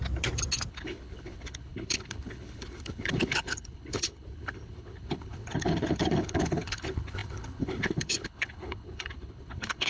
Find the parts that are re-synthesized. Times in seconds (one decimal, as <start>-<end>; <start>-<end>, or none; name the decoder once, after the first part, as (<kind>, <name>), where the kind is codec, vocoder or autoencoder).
0.7-9.9 (codec, HILCodec)